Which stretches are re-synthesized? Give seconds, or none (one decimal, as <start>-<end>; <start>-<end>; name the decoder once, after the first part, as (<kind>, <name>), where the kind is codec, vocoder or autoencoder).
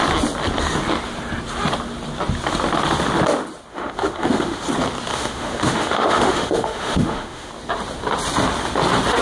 3.7-4.6 (autoencoder, DAC-VAE); 5.1-7.5